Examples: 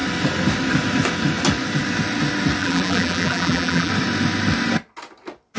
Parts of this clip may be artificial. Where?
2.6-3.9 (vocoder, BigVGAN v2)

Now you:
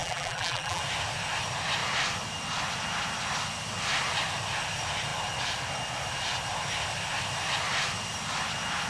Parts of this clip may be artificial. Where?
0.0-0.8 (vocoder, BigVGAN v2)

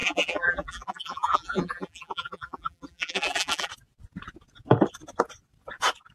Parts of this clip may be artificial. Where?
0.0-3.7 (vocoder, BigVGAN v2)

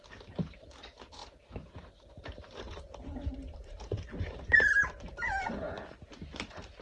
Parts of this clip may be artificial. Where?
0.0-6.8 (vocoder, BigVGAN v2)